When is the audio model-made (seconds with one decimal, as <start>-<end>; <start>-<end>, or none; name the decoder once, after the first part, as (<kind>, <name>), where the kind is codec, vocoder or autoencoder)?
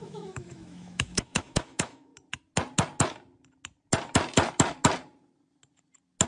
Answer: 0.0-2.1 (autoencoder, DAC-VAE)